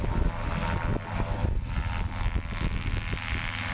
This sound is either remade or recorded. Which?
recorded